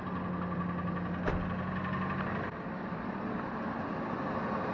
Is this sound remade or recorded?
recorded